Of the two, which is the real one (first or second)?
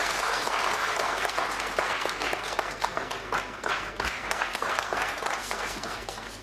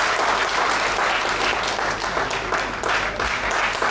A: second